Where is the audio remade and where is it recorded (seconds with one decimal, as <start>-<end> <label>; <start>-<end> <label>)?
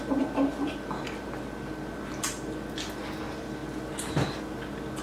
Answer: 0.0-5.0 recorded